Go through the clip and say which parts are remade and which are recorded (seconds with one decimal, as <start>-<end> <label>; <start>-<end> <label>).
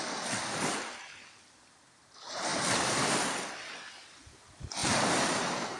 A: 0.0-4.8 recorded; 4.8-5.8 remade